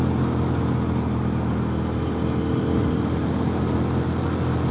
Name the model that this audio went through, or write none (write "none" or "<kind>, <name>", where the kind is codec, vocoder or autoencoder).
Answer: none